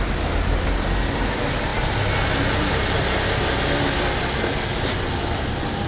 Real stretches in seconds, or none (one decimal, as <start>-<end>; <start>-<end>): 0.0-5.9